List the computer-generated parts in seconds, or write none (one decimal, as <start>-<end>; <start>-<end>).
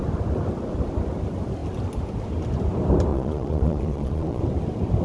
3.1-4.4